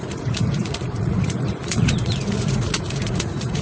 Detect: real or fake fake